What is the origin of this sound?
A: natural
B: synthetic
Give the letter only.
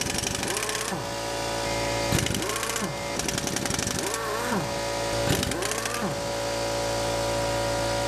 A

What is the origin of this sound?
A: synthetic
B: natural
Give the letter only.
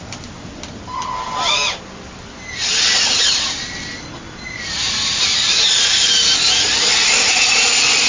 B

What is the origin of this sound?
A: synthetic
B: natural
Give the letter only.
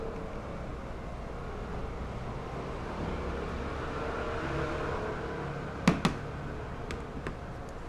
B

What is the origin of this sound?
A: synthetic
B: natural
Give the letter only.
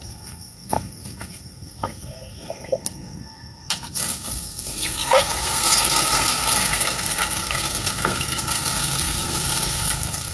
A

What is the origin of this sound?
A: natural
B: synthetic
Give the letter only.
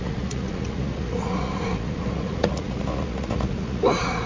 B